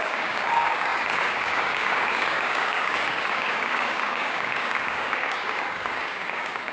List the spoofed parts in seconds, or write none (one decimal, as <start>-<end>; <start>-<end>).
0.0-6.7